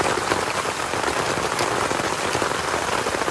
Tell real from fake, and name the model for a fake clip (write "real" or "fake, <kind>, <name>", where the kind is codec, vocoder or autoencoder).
real